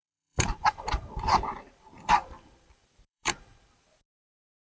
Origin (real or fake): fake